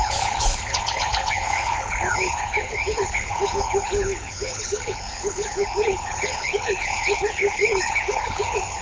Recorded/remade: remade